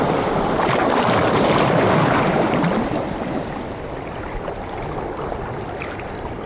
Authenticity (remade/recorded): recorded